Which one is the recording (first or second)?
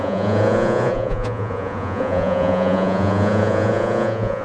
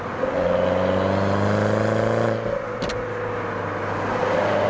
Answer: second